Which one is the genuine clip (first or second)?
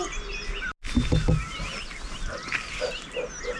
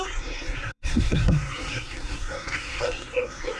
first